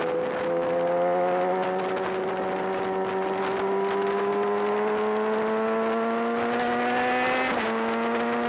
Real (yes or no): yes